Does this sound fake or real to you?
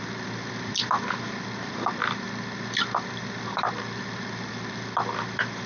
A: real